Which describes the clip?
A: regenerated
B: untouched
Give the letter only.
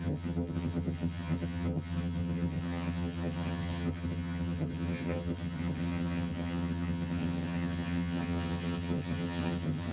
A